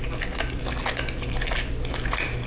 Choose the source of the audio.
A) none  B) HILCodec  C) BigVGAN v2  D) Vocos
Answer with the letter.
A